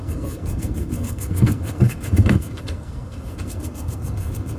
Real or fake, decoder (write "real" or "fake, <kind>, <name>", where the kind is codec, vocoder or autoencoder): fake, codec, SNAC